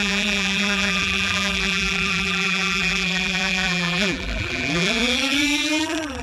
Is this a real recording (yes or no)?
no